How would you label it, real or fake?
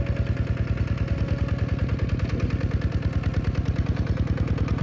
real